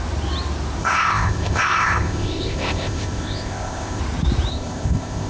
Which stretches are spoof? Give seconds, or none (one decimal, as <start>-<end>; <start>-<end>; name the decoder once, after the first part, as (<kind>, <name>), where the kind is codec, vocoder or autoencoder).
0.8-4.0 (codec, ZipCodec); 4.5-5.3